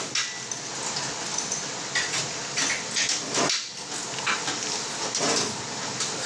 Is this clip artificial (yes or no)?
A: no